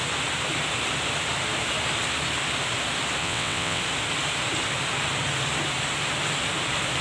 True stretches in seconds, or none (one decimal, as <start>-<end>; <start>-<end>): 0.0-3.2; 3.8-7.0